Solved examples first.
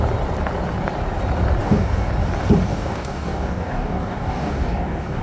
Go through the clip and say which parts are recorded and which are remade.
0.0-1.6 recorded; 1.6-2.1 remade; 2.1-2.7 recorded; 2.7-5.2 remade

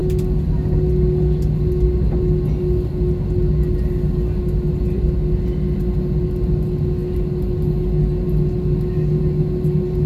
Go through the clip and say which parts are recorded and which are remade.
0.0-10.1 recorded

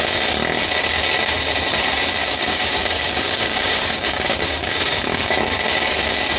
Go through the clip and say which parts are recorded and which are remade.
0.0-2.2 recorded; 2.2-6.0 remade; 6.0-6.4 recorded

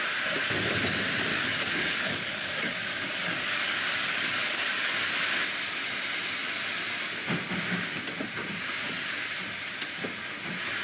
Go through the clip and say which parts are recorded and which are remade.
0.0-1.3 recorded; 1.3-5.1 remade; 5.1-10.8 recorded

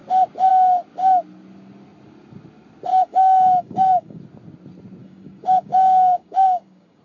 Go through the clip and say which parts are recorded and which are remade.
0.0-2.9 recorded; 2.9-4.2 remade; 4.2-5.0 recorded; 5.0-7.0 remade

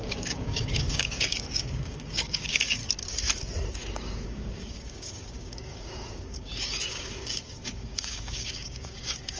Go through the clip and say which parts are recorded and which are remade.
0.0-2.8 remade; 2.8-3.7 recorded; 3.7-9.4 remade